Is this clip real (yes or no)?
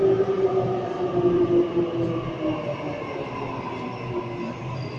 yes